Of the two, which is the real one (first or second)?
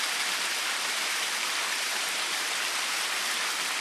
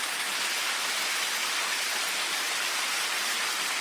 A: second